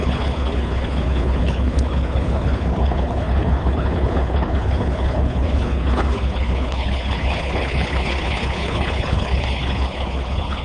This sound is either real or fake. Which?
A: fake